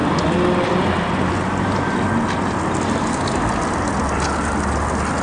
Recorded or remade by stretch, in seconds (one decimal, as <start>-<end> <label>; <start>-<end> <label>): 0.0-5.2 recorded